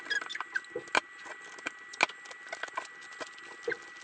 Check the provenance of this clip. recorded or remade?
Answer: recorded